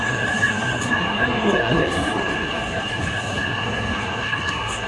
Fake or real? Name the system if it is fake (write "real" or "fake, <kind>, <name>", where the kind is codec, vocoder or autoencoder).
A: fake, codec, SNAC